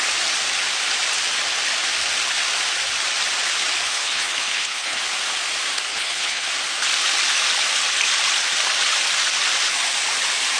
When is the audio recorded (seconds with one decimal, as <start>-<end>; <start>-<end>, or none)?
0.0-3.9; 5.0-5.9; 6.5-10.6